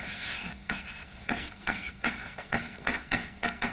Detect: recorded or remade remade